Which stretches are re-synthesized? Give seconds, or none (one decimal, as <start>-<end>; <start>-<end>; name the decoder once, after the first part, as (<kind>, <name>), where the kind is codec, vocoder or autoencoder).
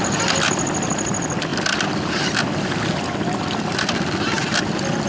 none